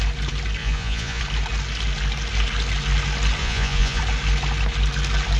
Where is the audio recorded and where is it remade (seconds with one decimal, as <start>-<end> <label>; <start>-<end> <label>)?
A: 0.0-0.6 recorded; 0.6-1.2 remade; 1.2-3.4 recorded; 3.4-4.0 remade; 4.0-5.4 recorded